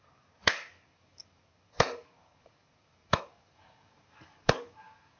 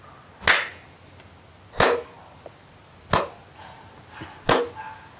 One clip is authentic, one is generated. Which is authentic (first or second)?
second